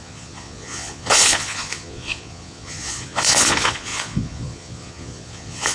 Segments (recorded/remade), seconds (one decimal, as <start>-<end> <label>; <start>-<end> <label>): 0.0-5.7 remade